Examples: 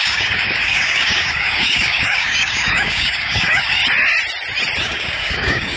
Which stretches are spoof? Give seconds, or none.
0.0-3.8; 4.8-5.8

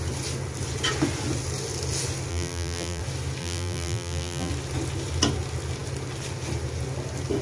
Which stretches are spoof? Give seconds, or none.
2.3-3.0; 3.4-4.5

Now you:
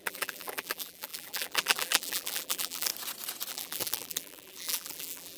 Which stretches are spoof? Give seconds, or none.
0.0-2.9; 3.5-5.4

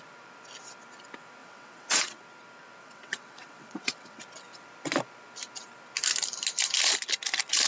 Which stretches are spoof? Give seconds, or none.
1.4-2.2; 2.8-4.2

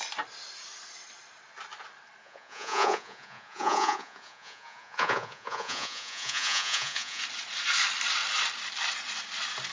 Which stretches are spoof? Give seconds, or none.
2.2-7.2

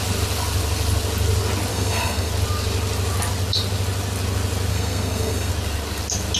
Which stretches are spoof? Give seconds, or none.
1.7-2.3; 4.7-5.5

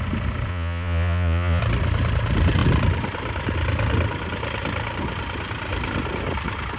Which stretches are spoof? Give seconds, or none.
0.5-1.6